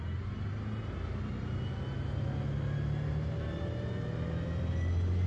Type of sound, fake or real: real